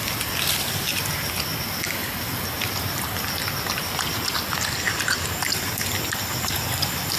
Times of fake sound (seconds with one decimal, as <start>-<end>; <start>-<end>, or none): none